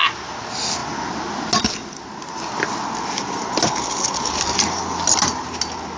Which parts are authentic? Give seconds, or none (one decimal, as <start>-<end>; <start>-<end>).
0.0-6.0